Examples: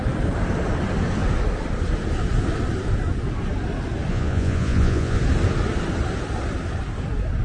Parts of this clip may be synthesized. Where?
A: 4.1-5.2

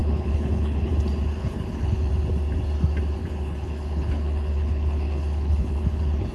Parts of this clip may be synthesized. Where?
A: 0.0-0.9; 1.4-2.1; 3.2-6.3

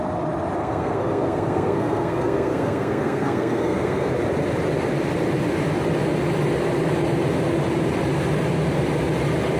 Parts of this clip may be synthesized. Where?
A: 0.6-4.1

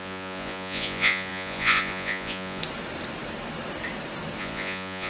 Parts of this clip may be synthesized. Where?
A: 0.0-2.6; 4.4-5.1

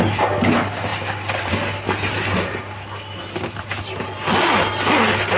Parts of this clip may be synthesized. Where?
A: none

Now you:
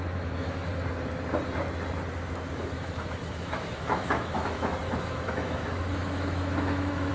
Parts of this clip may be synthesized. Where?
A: 0.0-0.7; 2.5-7.1